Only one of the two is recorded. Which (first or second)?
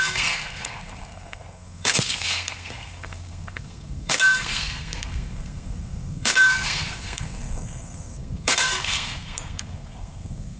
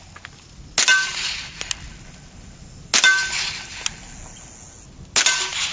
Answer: second